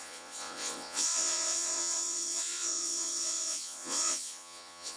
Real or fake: fake